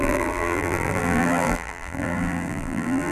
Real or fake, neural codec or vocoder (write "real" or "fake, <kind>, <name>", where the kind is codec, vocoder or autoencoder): fake, vocoder, BigVGAN v2